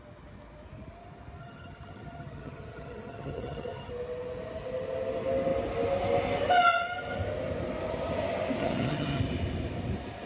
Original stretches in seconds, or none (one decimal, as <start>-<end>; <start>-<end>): 0.0-1.4; 3.9-8.6; 9.2-10.3